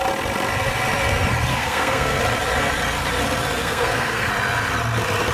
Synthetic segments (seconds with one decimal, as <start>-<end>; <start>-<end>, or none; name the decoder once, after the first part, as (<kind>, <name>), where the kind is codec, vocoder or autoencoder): 1.5-2.2 (codec, SNAC); 3.6-4.3